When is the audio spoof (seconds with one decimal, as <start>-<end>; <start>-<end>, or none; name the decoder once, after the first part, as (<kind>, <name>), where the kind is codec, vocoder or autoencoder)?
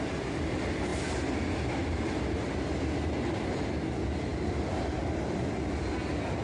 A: none